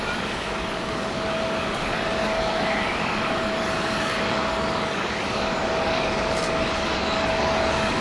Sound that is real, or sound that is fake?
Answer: fake